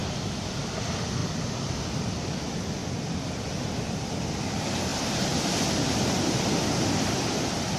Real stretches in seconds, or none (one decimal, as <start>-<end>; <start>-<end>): 0.6-1.2; 1.7-2.8; 3.4-4.9